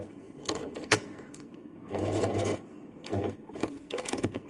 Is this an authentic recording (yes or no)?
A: no